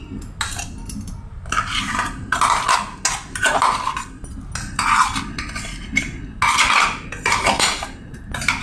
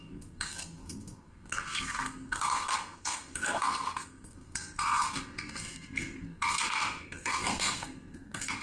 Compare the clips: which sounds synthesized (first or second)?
second